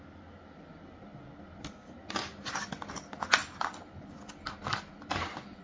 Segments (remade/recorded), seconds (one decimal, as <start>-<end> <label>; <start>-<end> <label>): 0.0-5.6 recorded

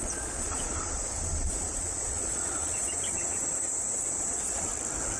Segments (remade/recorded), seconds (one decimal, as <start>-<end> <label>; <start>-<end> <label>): 0.0-4.7 remade; 4.7-5.2 recorded

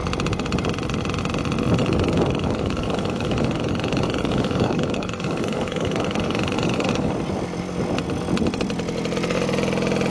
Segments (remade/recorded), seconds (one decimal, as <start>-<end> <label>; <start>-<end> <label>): 0.0-1.8 recorded; 1.8-7.1 remade; 7.1-10.1 recorded

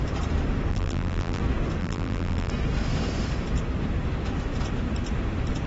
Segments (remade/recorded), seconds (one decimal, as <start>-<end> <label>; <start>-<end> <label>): 0.0-0.7 recorded; 0.7-1.4 remade; 1.4-1.8 recorded; 1.8-2.5 remade; 2.5-5.7 recorded

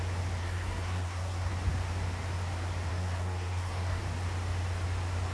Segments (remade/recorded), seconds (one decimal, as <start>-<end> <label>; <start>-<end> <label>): 0.0-0.4 recorded; 0.4-1.5 remade; 1.5-2.9 recorded; 2.9-4.0 remade; 4.0-5.3 recorded

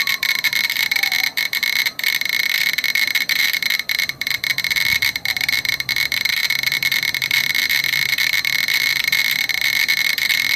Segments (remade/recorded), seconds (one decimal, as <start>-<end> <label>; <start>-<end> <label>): 0.0-10.6 remade

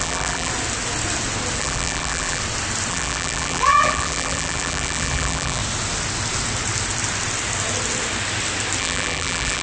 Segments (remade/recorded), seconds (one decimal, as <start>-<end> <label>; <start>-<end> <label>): 0.0-0.5 remade; 0.5-1.6 recorded; 1.6-2.4 remade; 2.4-2.9 recorded; 2.9-5.6 remade; 5.6-8.8 recorded; 8.8-9.6 remade

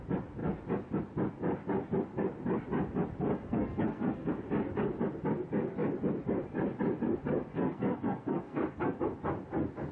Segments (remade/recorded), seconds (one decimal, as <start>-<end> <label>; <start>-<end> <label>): 0.0-3.3 recorded; 3.3-4.3 remade; 4.3-7.5 recorded; 7.5-9.0 remade; 9.0-9.9 recorded